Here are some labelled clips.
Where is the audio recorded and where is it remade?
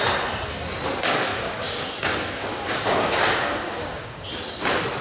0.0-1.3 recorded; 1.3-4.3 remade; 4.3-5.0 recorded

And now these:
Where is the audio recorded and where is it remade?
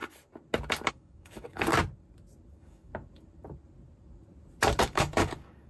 0.0-0.9 recorded; 0.9-1.7 remade; 1.7-2.5 recorded; 2.5-2.9 remade; 2.9-4.8 recorded; 4.8-5.7 remade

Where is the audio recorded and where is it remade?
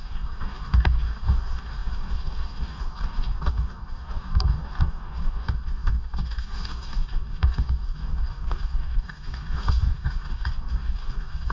0.0-11.5 remade